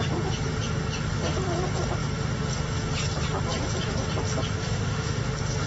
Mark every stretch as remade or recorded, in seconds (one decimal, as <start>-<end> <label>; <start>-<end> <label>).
0.0-4.6 recorded; 4.6-5.2 remade; 5.2-5.7 recorded

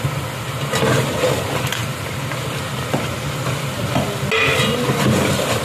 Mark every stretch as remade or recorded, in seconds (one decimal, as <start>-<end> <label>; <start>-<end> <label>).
0.0-5.6 recorded

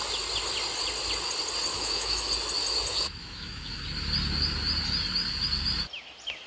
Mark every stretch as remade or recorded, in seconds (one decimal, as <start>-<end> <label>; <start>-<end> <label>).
0.0-1.7 recorded; 1.7-2.3 remade; 2.3-3.2 recorded; 3.2-3.8 remade; 3.8-6.5 recorded

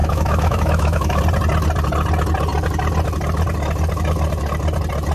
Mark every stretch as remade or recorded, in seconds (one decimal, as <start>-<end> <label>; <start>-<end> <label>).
0.0-1.2 remade; 1.2-5.1 recorded

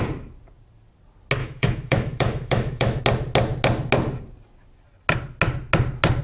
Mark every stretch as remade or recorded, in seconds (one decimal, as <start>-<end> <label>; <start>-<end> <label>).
0.0-1.4 recorded; 1.4-3.0 remade; 3.0-6.2 recorded

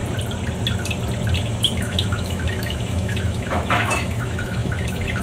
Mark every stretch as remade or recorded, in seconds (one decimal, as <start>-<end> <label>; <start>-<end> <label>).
0.0-1.4 recorded; 1.4-5.2 remade

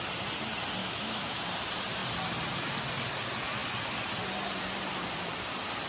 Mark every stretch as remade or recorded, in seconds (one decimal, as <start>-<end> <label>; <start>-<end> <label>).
0.0-0.8 recorded; 0.8-1.4 remade; 1.4-5.9 recorded

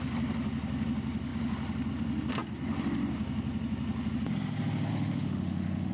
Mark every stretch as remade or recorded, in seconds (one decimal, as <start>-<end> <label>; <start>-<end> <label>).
0.0-4.9 recorded; 4.9-5.9 remade